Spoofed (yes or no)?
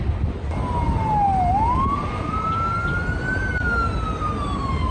no